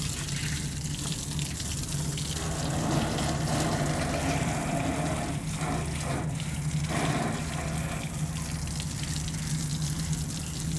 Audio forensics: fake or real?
real